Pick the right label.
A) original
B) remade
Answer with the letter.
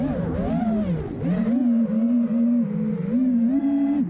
B